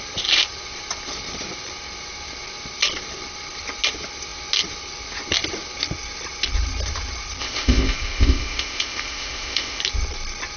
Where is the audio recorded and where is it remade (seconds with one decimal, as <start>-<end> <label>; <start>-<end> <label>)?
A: 0.0-7.4 recorded; 7.4-9.8 remade; 9.8-10.6 recorded